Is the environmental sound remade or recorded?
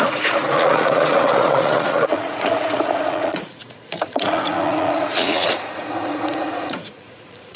remade